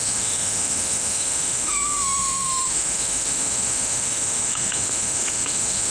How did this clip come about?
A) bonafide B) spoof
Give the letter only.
B